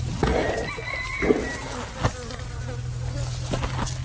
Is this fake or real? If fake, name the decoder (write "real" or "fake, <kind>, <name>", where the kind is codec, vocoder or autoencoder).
real